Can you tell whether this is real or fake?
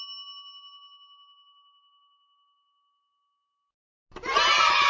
real